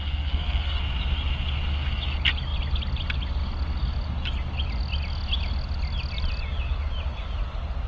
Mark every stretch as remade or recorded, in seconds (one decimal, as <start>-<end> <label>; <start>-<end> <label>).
0.0-0.8 remade; 0.8-7.9 recorded